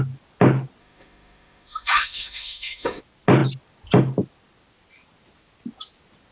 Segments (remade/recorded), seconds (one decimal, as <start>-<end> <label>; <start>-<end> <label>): 0.0-0.8 recorded; 0.8-3.0 remade; 3.0-6.3 recorded